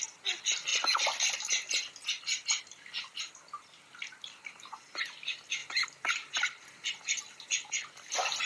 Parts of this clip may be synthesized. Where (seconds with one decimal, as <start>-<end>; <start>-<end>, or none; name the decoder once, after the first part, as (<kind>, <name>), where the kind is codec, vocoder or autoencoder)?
0.7-1.3 (vocoder, BigVGAN v2); 5.6-6.1